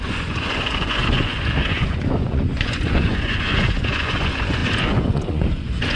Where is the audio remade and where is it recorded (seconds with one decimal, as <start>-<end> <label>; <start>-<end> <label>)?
0.0-5.9 remade